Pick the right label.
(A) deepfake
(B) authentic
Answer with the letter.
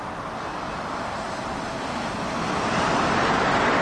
B